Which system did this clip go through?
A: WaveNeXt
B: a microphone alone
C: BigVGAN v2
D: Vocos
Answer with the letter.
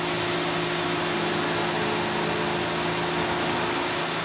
B